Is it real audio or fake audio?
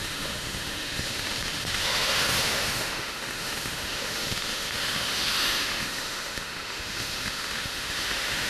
fake